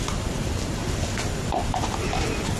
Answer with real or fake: real